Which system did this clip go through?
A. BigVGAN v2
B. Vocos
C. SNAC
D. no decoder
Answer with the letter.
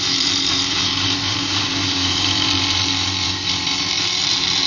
A